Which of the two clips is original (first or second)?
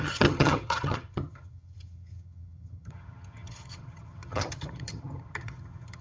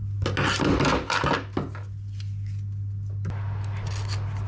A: second